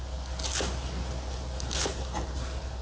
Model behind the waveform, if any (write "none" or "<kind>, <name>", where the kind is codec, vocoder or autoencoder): none